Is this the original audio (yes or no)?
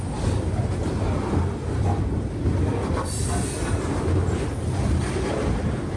yes